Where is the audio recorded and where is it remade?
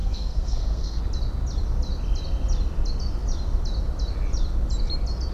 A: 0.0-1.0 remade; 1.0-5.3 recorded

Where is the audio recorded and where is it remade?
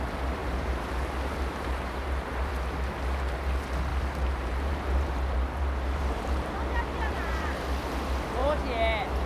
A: 0.0-0.4 recorded; 0.4-2.5 remade; 2.5-3.9 recorded; 3.9-7.6 remade; 7.6-9.3 recorded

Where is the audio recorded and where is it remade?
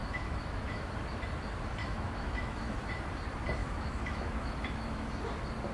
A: 0.0-0.9 remade; 0.9-1.8 recorded; 1.8-2.9 remade; 2.9-3.6 recorded; 3.6-5.3 remade; 5.3-5.7 recorded